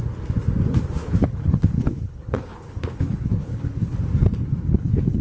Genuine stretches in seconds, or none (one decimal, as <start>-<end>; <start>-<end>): 0.0-1.0; 4.0-4.7